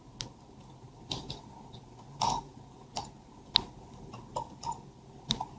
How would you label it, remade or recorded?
recorded